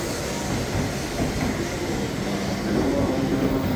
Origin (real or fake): real